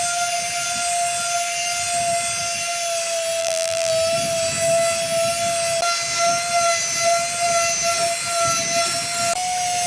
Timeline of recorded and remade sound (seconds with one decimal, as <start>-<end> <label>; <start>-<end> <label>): 0.0-3.4 recorded; 3.4-3.9 remade; 3.9-9.9 recorded